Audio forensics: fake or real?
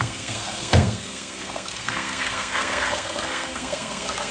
fake